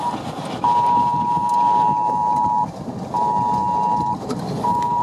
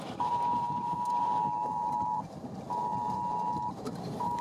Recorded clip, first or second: first